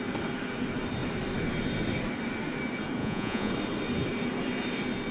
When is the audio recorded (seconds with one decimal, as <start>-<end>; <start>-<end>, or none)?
0.0-3.0; 3.5-5.1

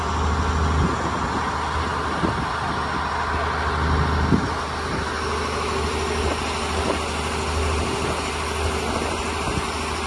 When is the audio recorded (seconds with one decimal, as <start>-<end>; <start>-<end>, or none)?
0.0-10.1

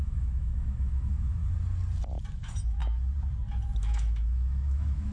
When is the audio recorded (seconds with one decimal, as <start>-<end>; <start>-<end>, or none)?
1.4-2.3; 2.8-3.8